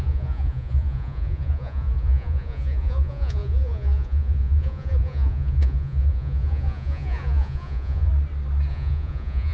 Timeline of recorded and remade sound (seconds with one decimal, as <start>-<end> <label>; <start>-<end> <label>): 0.0-8.1 remade; 8.1-8.7 recorded; 8.7-9.5 remade